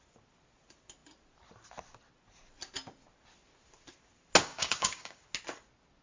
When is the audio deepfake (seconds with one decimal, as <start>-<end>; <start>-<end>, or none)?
4.4-5.2